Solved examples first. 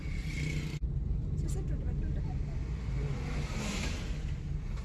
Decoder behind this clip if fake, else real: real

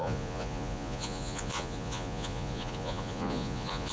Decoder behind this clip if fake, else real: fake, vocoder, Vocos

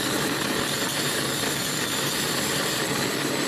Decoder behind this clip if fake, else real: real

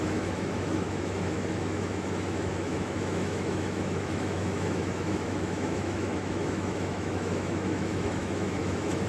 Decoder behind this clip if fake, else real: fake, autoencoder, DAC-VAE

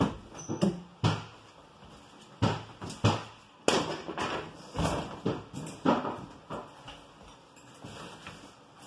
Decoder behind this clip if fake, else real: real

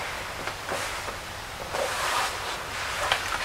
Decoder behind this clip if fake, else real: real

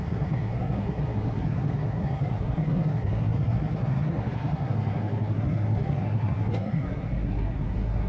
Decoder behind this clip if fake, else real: fake, codec, SNAC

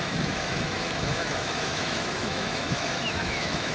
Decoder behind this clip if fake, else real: fake, autoencoder, DAC-VAE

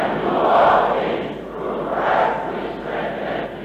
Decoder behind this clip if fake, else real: real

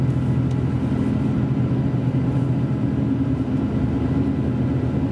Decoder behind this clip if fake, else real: real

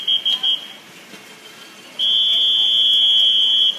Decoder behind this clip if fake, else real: real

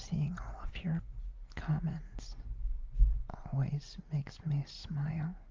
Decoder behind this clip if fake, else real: real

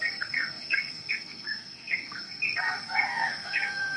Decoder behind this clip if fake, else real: fake, codec, SNAC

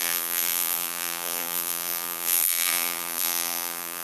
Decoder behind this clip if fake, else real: fake, vocoder, BigVGAN v2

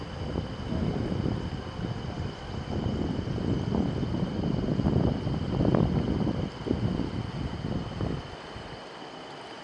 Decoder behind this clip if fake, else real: real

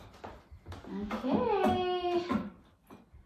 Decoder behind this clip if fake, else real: real